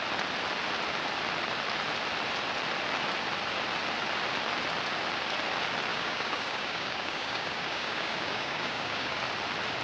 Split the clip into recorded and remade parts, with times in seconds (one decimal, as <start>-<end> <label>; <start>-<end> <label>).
0.0-5.9 recorded; 5.9-9.2 remade; 9.2-9.8 recorded